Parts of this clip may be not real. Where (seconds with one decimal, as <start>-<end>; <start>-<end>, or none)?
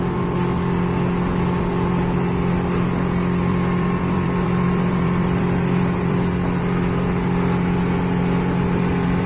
3.5-6.6